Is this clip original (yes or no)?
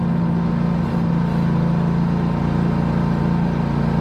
yes